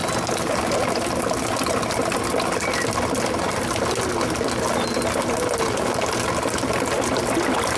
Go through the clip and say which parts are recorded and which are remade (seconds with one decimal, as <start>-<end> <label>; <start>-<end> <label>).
0.0-7.8 recorded